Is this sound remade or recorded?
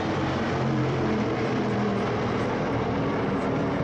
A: remade